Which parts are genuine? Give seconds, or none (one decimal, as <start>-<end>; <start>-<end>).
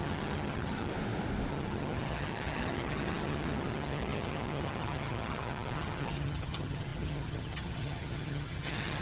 0.9-1.5